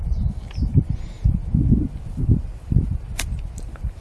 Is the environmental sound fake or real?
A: real